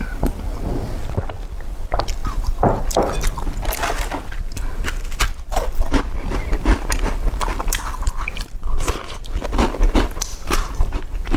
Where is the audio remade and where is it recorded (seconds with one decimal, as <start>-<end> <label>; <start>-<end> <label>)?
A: 0.0-2.2 recorded; 2.2-2.8 remade; 2.8-10.3 recorded; 10.3-11.0 remade; 11.0-11.4 recorded